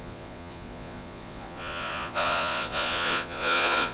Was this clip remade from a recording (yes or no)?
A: yes